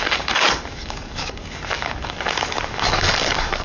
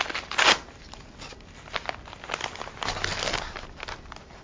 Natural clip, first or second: second